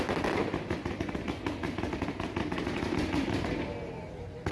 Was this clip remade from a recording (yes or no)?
no